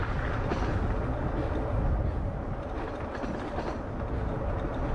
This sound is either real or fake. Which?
real